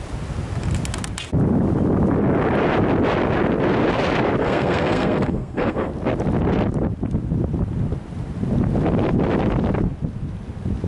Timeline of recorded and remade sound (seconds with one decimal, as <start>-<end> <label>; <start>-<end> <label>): 0.0-4.4 recorded; 4.4-5.9 remade; 5.9-10.9 recorded

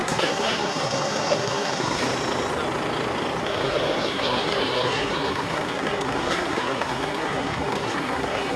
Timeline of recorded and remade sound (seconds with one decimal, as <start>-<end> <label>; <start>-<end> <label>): 0.0-2.0 remade; 2.0-3.4 recorded; 3.4-8.6 remade

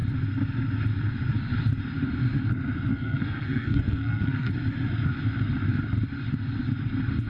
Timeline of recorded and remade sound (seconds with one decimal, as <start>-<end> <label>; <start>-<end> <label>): 0.0-2.9 recorded; 2.9-4.5 remade; 4.5-7.3 recorded

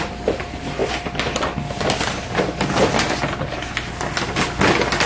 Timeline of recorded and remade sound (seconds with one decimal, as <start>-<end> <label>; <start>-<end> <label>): 0.0-5.1 recorded

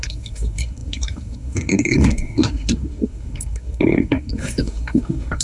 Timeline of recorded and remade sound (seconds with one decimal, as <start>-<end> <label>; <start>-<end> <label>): 0.0-5.4 remade

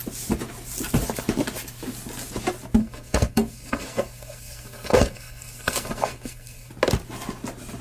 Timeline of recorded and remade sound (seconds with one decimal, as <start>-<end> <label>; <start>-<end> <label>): 0.0-2.8 recorded; 2.8-6.7 remade; 6.7-7.8 recorded

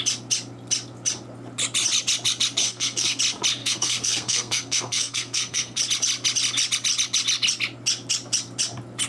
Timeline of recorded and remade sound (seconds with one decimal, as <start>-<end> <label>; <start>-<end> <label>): 0.0-2.6 recorded; 2.6-3.2 remade; 3.2-3.6 recorded; 3.6-5.8 remade; 5.8-9.1 recorded

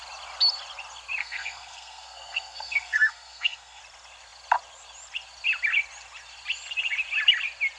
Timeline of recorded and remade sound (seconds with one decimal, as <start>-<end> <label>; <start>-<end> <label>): 0.0-1.2 recorded; 1.2-3.8 remade; 3.8-7.8 recorded